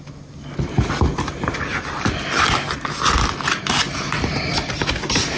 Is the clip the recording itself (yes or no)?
yes